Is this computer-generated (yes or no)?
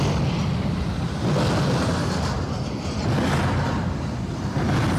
no